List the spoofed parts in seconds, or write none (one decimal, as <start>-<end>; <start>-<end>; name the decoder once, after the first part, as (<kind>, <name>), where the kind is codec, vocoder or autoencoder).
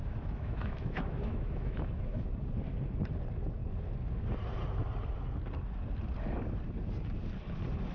0.0-2.3 (autoencoder, DAC-VAE)